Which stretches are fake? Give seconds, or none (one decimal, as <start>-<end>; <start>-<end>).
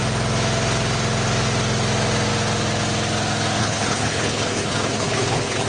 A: 3.6-5.7